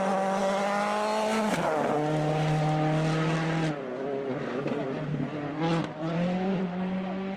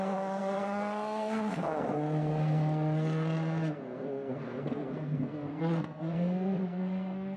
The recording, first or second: first